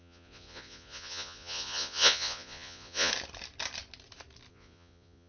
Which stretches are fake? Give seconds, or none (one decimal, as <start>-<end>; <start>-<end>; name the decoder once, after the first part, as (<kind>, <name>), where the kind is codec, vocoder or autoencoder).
0.0-3.1 (vocoder, Vocos); 4.5-5.3